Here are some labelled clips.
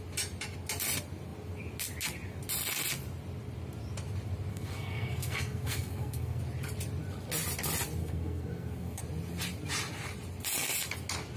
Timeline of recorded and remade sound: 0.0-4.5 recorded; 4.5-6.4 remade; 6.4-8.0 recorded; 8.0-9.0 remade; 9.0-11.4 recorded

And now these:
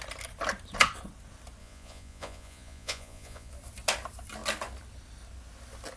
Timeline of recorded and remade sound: 0.0-1.6 recorded; 1.6-3.5 remade; 3.5-6.0 recorded

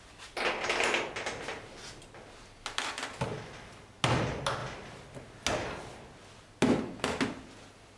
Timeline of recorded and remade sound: 0.0-8.0 recorded